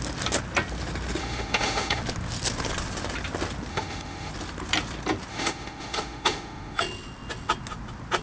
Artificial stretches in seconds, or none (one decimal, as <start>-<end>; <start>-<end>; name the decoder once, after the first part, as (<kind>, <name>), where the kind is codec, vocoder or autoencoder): 1.2-2.0 (autoencoder, DAC-VAE); 3.7-4.3; 5.3-6.8